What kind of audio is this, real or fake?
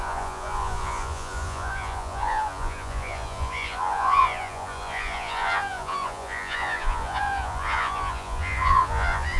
fake